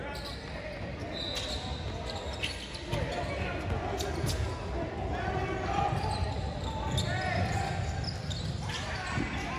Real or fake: real